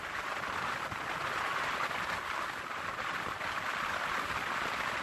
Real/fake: real